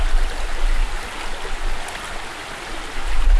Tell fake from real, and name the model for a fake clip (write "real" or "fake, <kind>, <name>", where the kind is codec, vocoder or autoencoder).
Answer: real